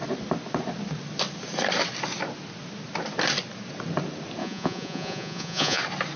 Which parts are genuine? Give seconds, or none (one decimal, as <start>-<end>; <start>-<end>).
0.0-4.4; 5.8-6.2

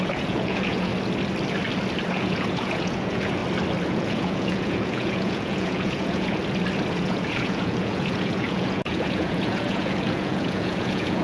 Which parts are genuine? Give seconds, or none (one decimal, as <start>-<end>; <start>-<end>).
0.9-2.1; 3.4-3.9; 6.4-6.9

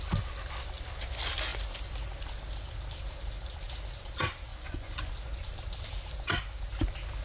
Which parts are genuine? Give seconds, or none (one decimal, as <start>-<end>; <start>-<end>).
0.0-4.5; 5.1-7.2